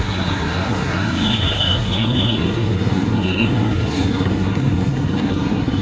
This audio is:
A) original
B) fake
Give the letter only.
B